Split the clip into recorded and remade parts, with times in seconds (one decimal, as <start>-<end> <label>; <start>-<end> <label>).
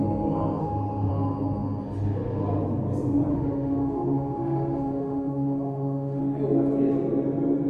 0.0-0.6 recorded; 0.6-1.1 remade; 1.1-3.3 recorded; 3.3-6.2 remade; 6.2-7.7 recorded